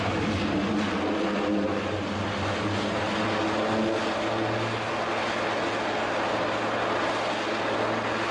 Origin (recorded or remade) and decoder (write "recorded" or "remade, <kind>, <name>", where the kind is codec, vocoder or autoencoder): recorded